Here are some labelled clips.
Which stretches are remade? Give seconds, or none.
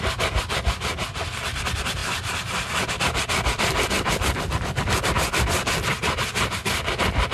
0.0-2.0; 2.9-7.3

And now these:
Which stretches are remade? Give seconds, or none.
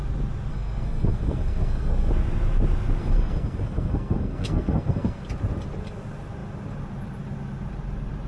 0.5-2.1; 3.0-5.2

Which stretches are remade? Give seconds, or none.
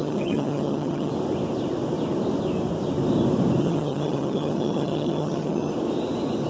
0.0-1.1; 3.6-5.7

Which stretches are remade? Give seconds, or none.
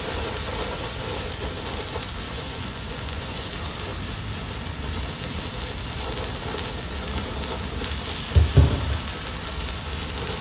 2.3-3.5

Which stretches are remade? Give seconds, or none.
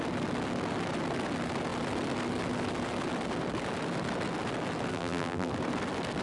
4.9-5.5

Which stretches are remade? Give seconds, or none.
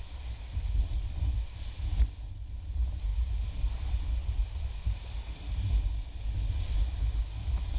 none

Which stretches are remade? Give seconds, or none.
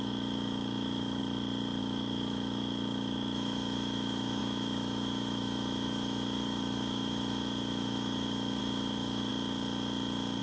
0.0-1.2; 1.8-9.3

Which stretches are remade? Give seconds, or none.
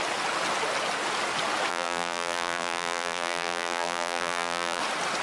1.7-4.8